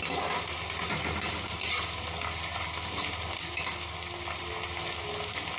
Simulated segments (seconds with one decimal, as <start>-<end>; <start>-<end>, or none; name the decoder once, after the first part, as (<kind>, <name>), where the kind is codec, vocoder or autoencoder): none